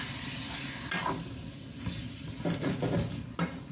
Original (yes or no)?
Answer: yes